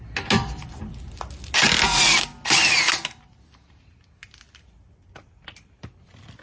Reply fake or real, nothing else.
real